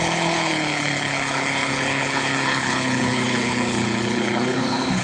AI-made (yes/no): yes